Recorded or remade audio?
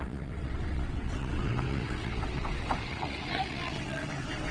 remade